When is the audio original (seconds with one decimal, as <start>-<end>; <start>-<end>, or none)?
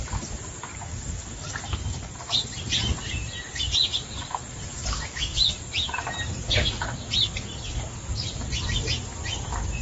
0.0-0.7; 1.5-4.8; 5.6-9.8